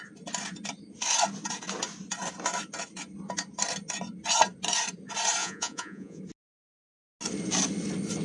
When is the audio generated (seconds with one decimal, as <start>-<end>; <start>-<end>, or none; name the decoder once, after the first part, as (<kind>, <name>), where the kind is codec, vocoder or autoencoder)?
5.4-6.2 (vocoder, Vocos)